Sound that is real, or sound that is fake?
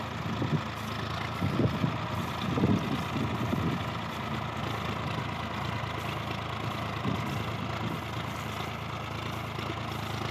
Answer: real